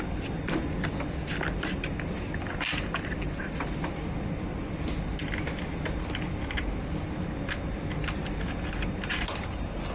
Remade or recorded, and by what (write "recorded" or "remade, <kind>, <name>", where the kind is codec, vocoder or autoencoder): recorded